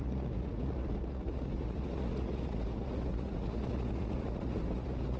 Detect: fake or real fake